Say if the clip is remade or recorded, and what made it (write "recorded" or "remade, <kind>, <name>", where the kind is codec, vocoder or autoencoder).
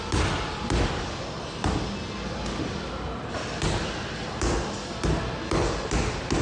recorded